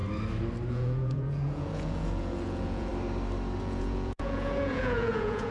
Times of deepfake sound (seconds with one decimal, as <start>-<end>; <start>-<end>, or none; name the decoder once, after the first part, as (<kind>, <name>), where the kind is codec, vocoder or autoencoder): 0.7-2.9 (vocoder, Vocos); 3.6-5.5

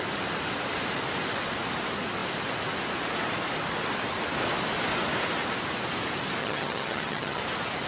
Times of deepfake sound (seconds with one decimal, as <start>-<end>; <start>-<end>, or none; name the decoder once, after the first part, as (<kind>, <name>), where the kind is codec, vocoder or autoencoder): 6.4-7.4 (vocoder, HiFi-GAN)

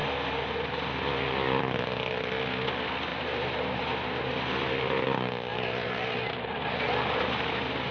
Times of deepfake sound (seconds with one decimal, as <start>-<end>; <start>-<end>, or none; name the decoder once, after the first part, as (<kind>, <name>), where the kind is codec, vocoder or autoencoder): 3.1-3.8 (vocoder, BigVGAN v2); 5.5-6.5

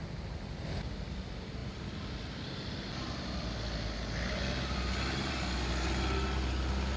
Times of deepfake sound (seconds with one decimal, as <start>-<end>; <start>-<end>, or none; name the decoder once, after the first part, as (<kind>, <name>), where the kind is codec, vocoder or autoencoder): none

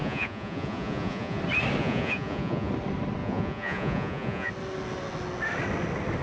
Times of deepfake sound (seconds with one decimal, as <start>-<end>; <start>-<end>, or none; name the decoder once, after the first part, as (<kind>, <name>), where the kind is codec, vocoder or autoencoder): 0.0-1.4 (vocoder, Vocos); 1.8-2.7; 3.2-4.5

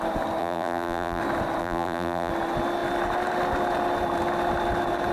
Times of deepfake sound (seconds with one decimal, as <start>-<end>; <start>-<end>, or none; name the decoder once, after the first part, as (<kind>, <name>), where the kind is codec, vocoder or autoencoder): 0.4-1.2 (vocoder, BigVGAN v2); 1.6-2.3